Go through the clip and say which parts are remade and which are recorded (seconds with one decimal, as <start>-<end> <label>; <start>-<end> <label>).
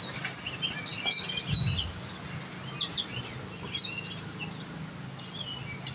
0.0-5.9 recorded